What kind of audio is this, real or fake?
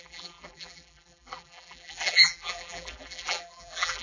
fake